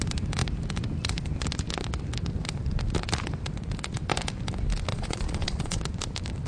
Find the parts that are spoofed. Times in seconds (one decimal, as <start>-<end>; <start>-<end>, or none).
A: 4.9-5.8